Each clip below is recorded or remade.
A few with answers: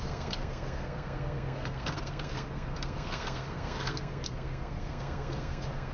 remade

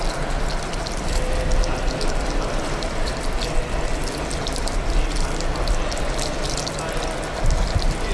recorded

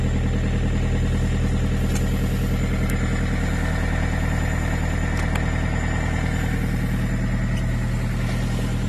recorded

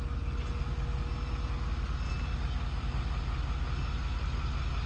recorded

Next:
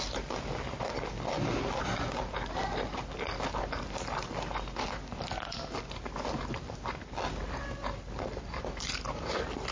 remade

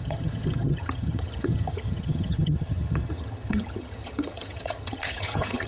remade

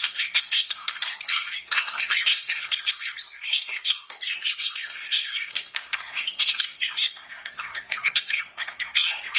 remade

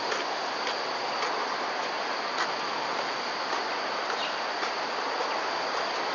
recorded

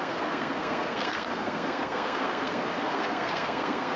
remade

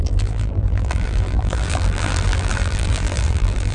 remade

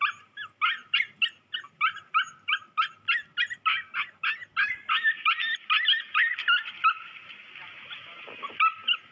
recorded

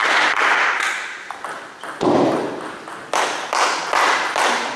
recorded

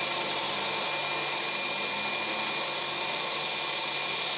recorded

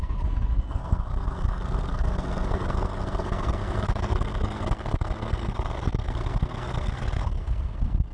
remade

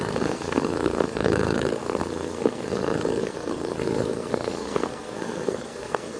remade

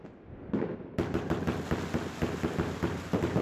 recorded